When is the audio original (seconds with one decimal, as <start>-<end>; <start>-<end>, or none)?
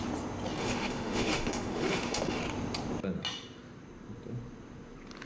0.0-0.6; 2.4-5.3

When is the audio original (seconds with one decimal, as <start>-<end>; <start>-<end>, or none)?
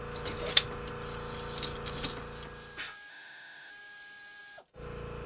0.0-3.1; 3.7-5.3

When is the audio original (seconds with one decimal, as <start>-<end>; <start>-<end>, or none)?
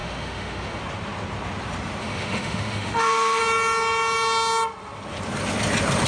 0.8-2.0; 3.4-6.1